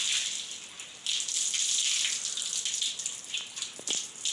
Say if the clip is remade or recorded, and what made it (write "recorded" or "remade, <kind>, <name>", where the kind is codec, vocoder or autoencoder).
recorded